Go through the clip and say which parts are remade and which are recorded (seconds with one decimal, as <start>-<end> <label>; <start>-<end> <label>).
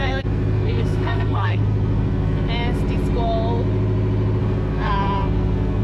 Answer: 0.0-2.5 remade; 2.5-4.4 recorded; 4.4-5.8 remade